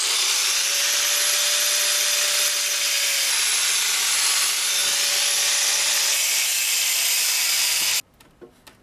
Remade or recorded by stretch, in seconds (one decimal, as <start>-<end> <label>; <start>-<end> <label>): 0.0-8.8 recorded